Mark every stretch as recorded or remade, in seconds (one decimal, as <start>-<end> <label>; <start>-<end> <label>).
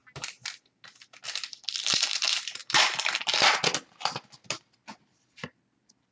0.0-6.1 recorded